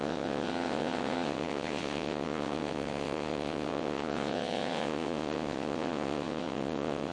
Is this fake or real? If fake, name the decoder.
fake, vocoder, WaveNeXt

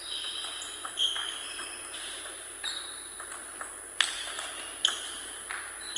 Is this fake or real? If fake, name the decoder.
real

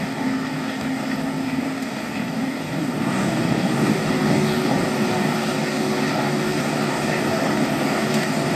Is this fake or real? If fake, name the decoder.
fake, codec, DAC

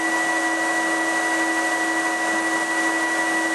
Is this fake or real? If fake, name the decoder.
real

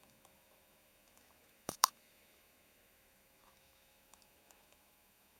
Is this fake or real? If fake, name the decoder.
fake, autoencoder, DAC-VAE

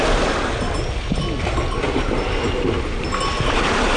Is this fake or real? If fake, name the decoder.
real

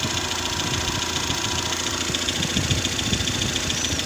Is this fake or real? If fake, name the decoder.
real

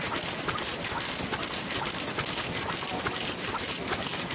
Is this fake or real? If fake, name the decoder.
real